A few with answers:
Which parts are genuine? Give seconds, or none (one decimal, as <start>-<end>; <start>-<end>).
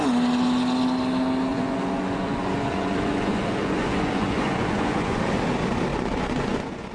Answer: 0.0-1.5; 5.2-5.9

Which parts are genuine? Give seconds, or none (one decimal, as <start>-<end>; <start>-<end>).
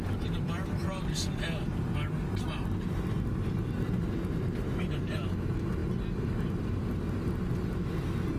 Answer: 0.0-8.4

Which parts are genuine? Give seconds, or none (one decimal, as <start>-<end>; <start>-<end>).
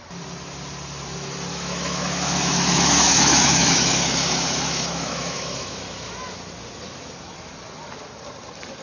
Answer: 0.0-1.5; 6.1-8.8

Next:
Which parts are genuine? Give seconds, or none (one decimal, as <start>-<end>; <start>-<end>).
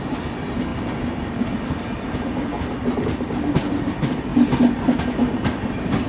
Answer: 0.0-6.1